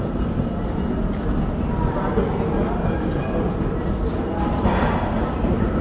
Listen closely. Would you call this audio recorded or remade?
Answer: recorded